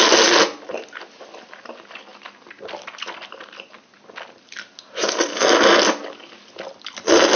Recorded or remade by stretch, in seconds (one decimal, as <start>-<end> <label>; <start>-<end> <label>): 0.0-7.4 recorded